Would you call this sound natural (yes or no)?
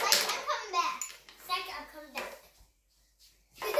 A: yes